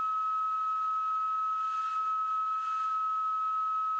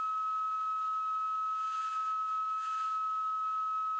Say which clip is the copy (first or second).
second